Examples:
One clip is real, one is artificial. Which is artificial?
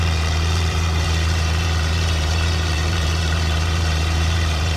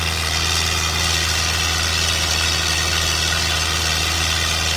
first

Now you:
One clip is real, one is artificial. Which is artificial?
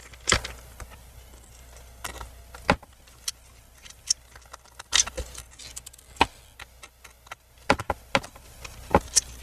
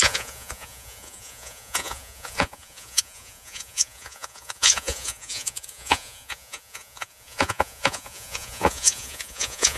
second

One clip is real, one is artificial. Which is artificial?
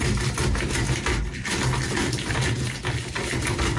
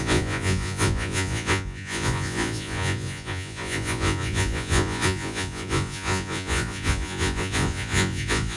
second